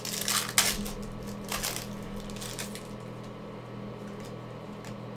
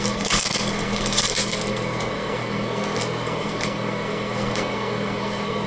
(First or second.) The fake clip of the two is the second